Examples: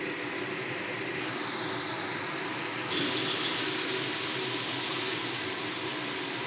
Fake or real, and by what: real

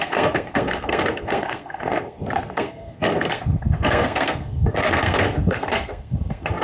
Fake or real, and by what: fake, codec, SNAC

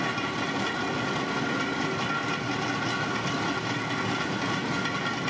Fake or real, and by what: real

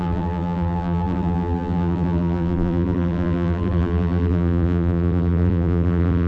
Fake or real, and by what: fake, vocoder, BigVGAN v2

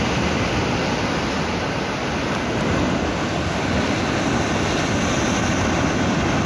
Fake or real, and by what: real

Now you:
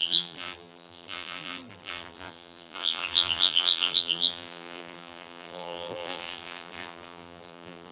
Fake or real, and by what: fake, vocoder, BigVGAN v2